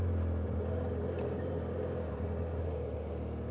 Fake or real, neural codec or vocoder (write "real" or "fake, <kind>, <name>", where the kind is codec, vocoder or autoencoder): real